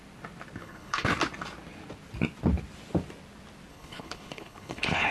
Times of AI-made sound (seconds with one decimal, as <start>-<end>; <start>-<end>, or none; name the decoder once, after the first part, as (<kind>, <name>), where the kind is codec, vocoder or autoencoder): 0.6-1.1 (codec, HILCodec); 3.7-5.1